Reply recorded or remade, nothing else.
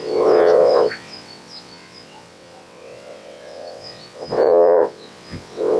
remade